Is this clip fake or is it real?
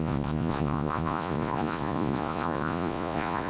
fake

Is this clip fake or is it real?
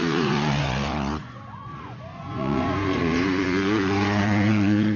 fake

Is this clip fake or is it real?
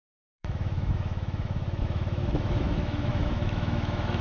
fake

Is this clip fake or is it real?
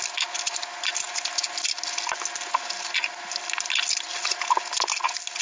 real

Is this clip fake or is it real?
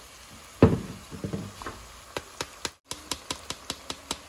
real